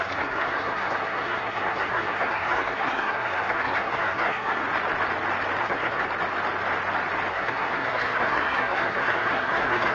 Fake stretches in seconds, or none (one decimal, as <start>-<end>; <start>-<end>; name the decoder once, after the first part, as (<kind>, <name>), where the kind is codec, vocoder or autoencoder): 0.0-4.6 (codec, SNAC); 5.6-6.0; 7.3-9.9